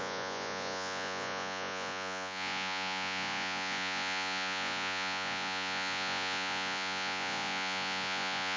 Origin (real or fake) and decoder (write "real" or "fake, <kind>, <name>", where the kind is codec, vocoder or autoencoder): fake, vocoder, Vocos